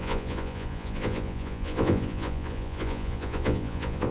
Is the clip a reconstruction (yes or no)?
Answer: yes